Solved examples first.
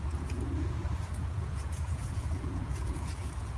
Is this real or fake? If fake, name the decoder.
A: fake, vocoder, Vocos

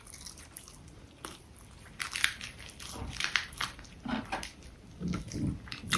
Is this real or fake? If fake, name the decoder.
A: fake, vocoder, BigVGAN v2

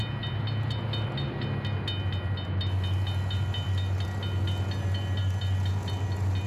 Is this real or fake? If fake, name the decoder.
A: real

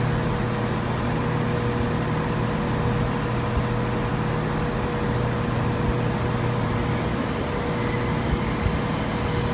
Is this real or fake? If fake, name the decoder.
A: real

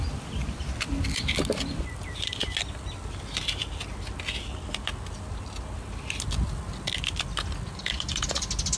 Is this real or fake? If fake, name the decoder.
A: real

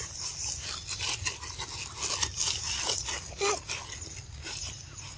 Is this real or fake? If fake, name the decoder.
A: real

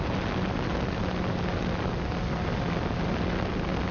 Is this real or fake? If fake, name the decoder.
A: real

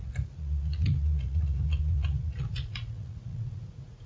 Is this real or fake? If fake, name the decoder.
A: fake, vocoder, Vocos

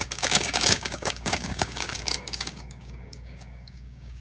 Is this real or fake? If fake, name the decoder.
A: fake, codec, DAC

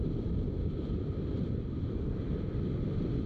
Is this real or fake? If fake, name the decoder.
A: real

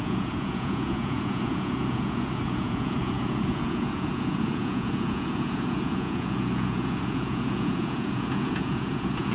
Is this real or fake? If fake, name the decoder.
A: fake, vocoder, Vocos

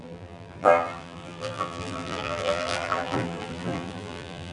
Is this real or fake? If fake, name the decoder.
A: fake, vocoder, BigVGAN v2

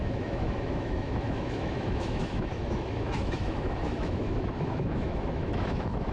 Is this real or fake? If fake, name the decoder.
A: fake, autoencoder, DAC-VAE